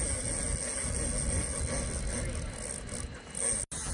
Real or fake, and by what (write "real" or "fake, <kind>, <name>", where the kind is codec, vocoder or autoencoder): real